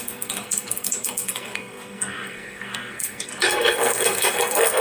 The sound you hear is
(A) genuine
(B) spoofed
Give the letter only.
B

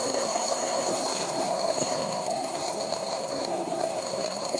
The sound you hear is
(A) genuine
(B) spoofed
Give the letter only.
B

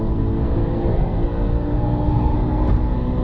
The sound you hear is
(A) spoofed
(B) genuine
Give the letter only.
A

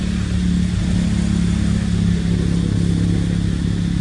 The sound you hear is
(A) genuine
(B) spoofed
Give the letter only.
A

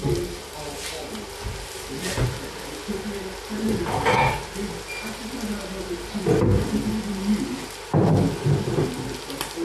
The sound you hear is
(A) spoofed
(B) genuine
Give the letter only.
B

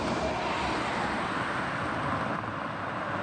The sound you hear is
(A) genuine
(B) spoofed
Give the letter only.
A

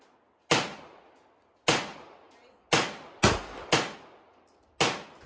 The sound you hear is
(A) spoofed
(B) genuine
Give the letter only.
B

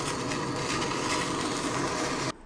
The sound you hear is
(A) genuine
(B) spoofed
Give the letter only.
A